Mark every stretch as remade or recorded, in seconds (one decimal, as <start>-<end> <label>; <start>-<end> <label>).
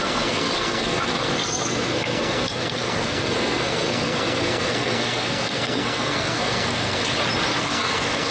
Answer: 0.0-7.0 remade; 7.0-7.6 recorded; 7.6-8.3 remade